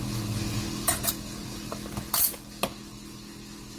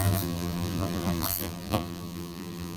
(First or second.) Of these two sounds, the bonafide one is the first